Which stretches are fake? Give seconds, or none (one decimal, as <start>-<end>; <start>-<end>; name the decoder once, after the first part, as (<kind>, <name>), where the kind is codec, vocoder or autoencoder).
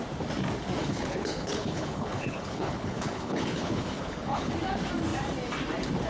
0.8-4.5 (codec, HILCodec)